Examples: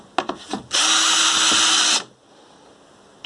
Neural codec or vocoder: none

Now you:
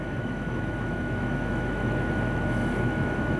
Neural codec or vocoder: autoencoder, DAC-VAE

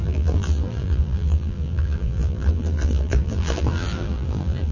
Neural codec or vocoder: vocoder, BigVGAN v2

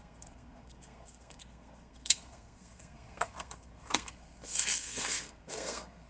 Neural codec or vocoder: codec, SNAC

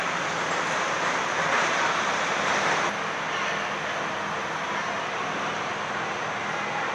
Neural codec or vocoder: none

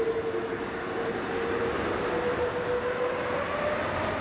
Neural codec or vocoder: none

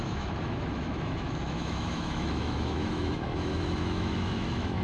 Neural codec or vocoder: autoencoder, DAC-VAE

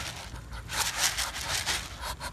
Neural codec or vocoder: none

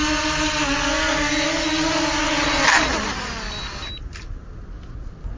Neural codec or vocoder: none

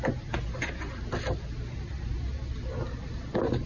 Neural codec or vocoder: none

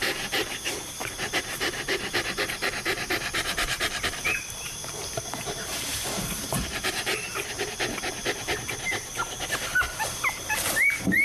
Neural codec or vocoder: vocoder, BigVGAN v2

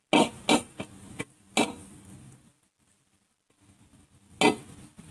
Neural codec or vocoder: none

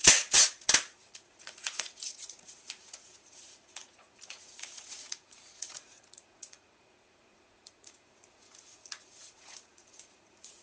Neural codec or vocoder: vocoder, Vocos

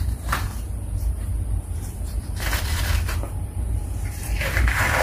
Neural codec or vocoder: vocoder, BigVGAN v2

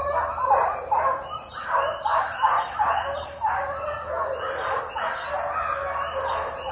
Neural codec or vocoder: none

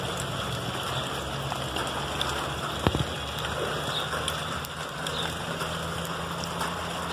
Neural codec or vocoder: none